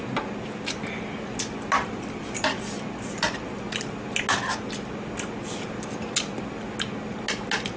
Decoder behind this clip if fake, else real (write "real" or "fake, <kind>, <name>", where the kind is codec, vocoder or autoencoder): real